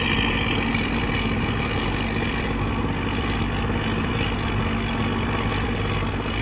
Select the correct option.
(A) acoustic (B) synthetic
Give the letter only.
A